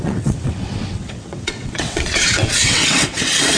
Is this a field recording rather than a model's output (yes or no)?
no